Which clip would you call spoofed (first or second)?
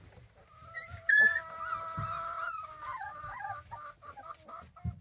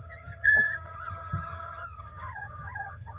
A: second